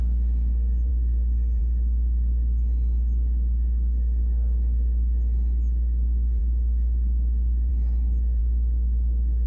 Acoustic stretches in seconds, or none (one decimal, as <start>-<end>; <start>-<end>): 0.0-0.9; 1.6-6.4; 7.7-8.4